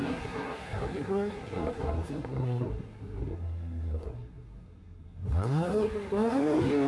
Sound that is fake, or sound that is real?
fake